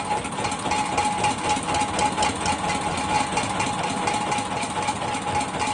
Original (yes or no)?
yes